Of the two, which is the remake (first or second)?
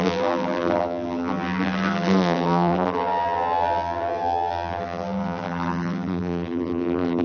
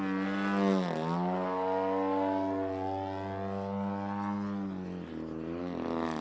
first